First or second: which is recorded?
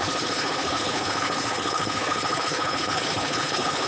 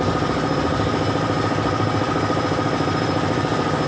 second